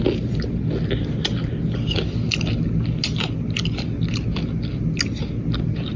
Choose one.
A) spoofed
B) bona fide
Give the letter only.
B